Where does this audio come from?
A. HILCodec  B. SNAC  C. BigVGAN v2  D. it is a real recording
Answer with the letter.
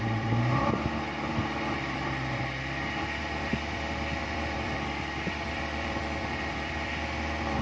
C